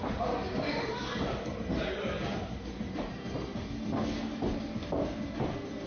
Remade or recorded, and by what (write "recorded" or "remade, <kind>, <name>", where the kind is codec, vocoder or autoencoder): recorded